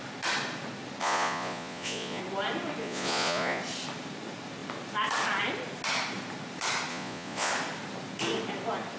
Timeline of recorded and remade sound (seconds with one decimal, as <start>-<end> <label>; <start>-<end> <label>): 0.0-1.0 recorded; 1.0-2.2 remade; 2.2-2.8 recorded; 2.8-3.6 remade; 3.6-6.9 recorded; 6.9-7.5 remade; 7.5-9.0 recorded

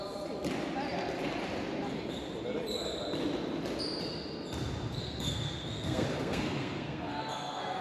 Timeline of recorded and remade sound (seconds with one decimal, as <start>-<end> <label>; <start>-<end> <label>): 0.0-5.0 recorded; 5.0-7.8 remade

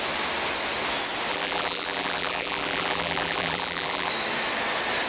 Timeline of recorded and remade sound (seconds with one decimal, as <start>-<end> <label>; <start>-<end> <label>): 0.0-1.3 recorded; 1.3-4.1 remade; 4.1-5.1 recorded